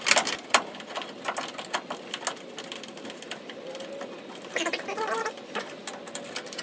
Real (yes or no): yes